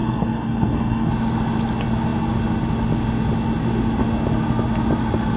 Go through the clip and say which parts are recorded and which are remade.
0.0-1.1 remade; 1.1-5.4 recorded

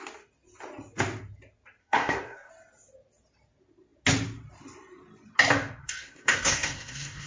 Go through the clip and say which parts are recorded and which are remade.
0.0-1.8 recorded; 1.8-2.5 remade; 2.5-5.8 recorded; 5.8-7.3 remade

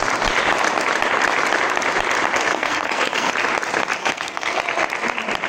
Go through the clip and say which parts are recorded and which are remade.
0.0-2.5 recorded; 2.5-3.3 remade; 3.3-4.0 recorded; 4.0-4.6 remade; 4.6-5.5 recorded